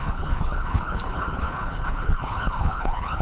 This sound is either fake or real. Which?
fake